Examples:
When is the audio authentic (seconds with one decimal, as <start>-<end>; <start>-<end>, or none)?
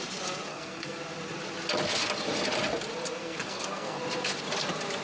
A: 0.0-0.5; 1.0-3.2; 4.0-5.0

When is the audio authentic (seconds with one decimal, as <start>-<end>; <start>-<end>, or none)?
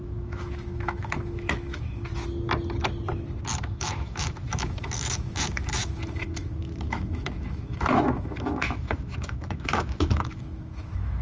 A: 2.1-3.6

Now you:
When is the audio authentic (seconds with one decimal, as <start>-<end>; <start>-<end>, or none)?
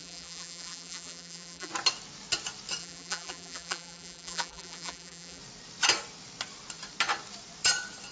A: 1.7-2.8; 5.4-8.1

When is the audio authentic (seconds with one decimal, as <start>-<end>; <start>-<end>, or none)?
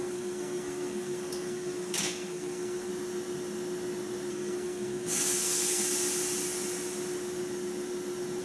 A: 2.9-4.3; 5.8-8.4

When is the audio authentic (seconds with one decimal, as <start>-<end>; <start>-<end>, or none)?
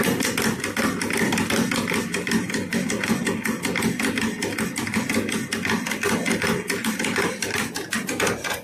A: 0.0-2.1; 3.2-6.8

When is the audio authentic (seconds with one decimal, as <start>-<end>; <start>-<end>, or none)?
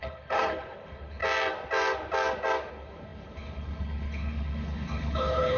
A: 1.2-2.7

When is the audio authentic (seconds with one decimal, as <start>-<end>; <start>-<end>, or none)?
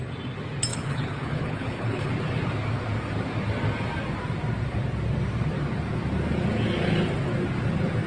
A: 0.0-0.7; 2.1-8.1